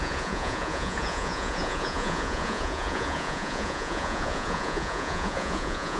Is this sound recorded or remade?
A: remade